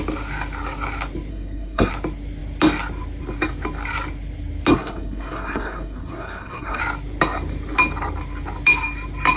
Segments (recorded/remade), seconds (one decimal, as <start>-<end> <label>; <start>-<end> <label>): 0.0-1.3 recorded; 1.3-1.9 remade; 1.9-4.7 recorded; 4.7-6.8 remade; 6.8-9.4 recorded